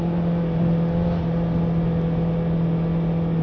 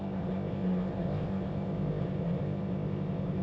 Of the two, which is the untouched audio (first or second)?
first